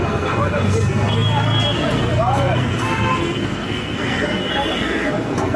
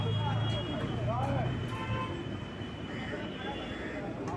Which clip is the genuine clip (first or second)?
second